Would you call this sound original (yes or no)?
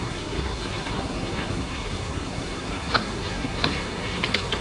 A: no